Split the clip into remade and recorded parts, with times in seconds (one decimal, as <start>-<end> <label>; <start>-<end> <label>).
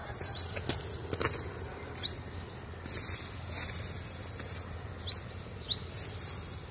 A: 0.0-0.5 remade; 0.5-6.7 recorded